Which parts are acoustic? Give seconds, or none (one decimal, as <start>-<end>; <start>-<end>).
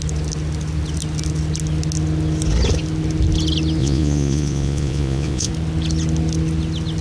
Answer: 0.0-3.8; 5.5-7.0